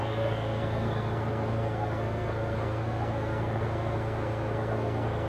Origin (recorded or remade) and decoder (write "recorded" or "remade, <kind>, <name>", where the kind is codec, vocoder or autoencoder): remade, codec, SNAC